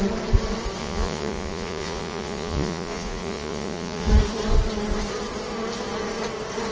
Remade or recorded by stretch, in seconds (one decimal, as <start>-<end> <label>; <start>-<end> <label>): 0.0-0.8 recorded; 0.8-4.1 remade; 4.1-6.7 recorded